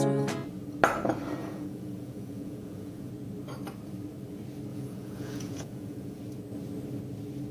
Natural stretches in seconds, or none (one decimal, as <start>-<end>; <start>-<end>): 0.0-1.4; 3.1-4.7; 6.2-7.5